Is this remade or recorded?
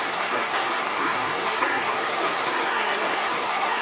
remade